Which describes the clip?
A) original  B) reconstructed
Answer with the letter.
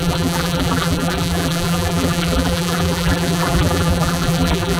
B